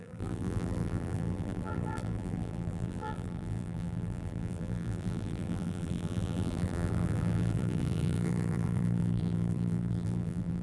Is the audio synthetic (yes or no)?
yes